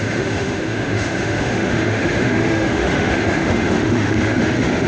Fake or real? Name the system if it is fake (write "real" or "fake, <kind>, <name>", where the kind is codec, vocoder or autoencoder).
fake, autoencoder, DAC-VAE